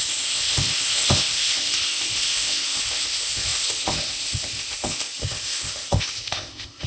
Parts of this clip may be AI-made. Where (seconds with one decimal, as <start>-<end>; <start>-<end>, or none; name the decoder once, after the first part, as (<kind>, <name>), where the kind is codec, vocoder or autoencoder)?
0.0-6.9 (codec, ZipCodec)